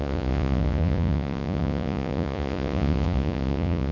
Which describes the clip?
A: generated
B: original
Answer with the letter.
A